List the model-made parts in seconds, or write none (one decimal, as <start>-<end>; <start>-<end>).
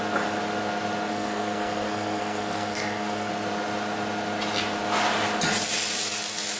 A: 1.1-3.3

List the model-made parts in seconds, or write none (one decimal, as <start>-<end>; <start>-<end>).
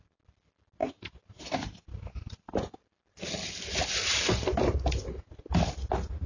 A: none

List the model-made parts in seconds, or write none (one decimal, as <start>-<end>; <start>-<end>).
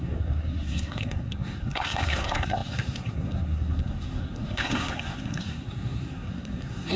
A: 0.0-7.0